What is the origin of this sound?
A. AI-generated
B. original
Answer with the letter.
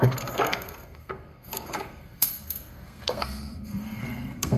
A